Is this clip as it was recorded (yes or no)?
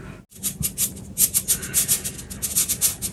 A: yes